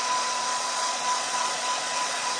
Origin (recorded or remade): remade